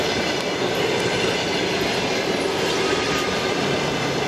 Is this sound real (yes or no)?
yes